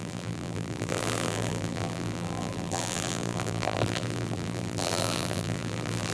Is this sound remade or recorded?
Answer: remade